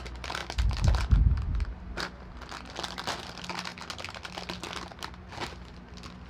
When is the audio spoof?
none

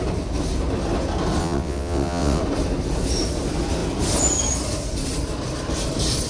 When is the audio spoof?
1.4-2.4 (vocoder, WaveNeXt)